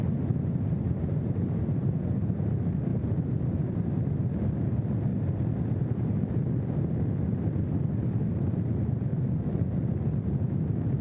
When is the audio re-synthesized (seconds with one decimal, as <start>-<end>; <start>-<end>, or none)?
0.0-2.5